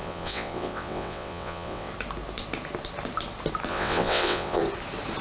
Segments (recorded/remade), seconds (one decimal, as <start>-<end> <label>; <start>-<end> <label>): 0.0-1.9 remade; 1.9-3.7 recorded; 3.7-4.6 remade; 4.6-5.2 recorded